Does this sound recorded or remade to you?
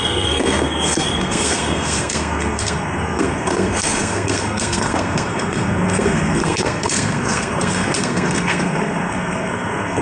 remade